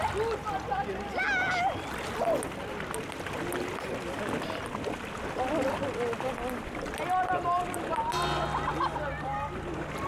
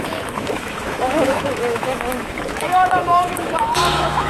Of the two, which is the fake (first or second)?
second